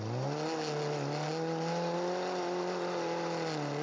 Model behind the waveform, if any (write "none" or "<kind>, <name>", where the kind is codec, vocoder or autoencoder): none